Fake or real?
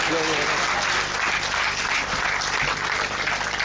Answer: real